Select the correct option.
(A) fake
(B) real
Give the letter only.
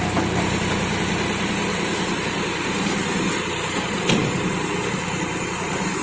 B